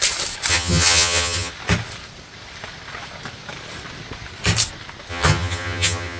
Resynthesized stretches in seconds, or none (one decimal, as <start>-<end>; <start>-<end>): 0.5-1.5; 5.1-6.2